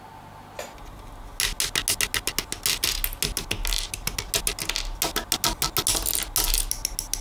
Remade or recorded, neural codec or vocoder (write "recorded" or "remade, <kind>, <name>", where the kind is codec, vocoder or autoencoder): recorded